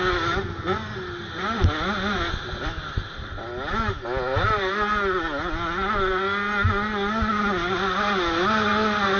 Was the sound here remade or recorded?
recorded